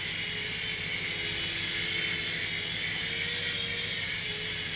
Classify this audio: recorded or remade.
recorded